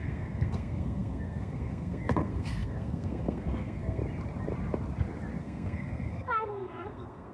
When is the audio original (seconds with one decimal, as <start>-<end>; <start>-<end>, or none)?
4.0-5.4